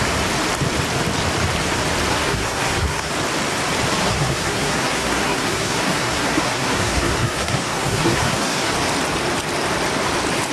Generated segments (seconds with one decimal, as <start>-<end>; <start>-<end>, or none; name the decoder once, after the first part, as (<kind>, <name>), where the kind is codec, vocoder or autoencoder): 2.1-3.1 (codec, SNAC); 4.0-8.7